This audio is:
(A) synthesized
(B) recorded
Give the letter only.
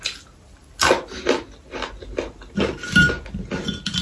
B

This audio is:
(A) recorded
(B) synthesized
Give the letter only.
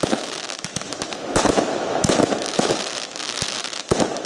B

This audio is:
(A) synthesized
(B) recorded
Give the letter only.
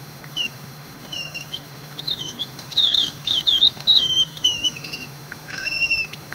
A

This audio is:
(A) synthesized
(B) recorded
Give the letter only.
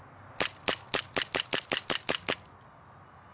B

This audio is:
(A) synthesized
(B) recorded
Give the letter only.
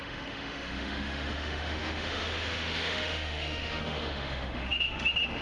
A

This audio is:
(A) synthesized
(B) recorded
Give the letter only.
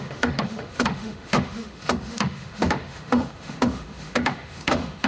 A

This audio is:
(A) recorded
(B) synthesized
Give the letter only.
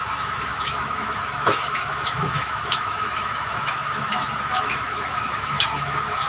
B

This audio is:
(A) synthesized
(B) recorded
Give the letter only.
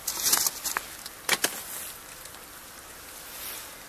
B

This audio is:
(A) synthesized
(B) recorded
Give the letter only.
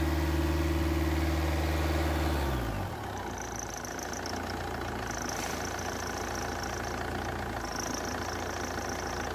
B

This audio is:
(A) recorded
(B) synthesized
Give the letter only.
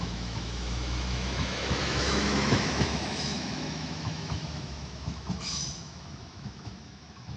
B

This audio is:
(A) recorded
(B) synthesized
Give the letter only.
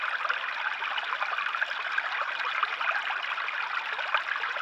A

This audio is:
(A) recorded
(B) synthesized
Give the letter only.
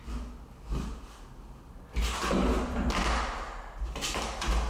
A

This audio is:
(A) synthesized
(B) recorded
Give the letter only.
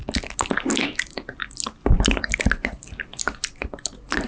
B